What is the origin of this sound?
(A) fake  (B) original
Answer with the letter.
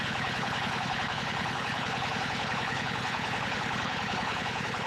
A